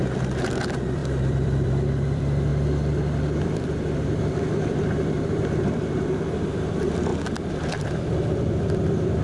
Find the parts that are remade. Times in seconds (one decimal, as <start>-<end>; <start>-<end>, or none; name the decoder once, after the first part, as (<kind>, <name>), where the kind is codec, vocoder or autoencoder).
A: 0.0-2.5 (vocoder, BigVGAN v2); 3.4-7.1; 8.1-9.2